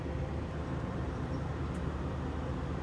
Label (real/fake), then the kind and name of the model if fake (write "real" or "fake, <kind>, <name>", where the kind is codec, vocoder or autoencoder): fake, vocoder, BigVGAN v2